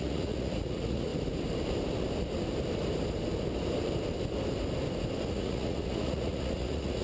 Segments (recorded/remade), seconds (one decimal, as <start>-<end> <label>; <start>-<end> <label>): 0.0-1.1 remade; 1.1-5.3 recorded; 5.3-7.0 remade